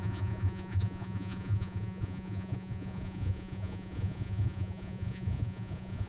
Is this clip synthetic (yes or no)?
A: yes